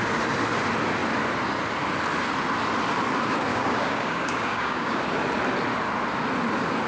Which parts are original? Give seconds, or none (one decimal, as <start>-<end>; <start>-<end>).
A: 0.0-3.5; 5.0-6.9